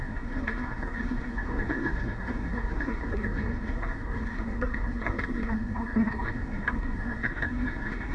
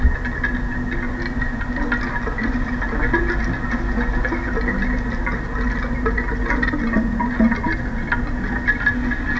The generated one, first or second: first